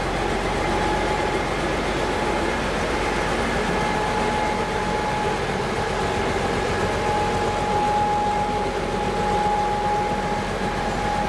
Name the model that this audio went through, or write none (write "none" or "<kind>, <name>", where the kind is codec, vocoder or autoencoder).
none